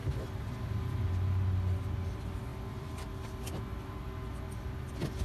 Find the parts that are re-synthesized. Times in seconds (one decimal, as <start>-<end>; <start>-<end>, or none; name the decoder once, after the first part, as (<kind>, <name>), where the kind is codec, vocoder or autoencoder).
0.0-1.0 (vocoder, BigVGAN v2); 2.5-3.6